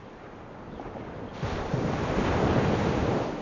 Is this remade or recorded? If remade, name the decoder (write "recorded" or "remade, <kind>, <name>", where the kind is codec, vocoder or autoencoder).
recorded